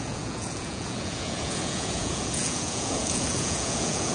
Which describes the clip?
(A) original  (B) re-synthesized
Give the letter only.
B